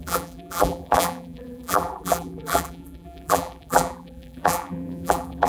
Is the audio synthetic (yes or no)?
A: yes